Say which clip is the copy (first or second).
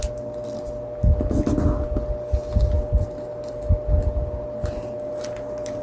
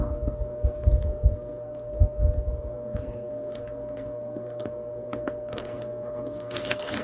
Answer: second